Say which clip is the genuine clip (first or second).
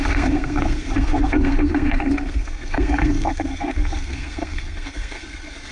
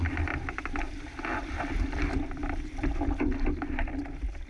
second